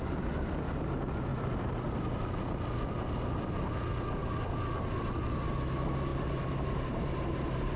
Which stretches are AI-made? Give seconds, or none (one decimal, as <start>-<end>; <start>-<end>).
1.3-1.9; 6.1-7.8